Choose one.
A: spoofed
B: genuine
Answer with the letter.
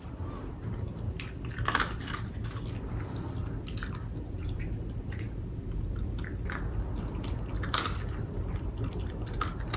B